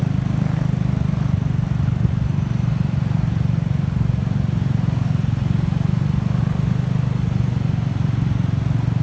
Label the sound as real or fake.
real